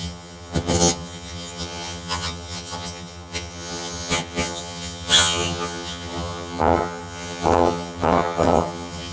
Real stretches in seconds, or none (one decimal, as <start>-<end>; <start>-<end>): none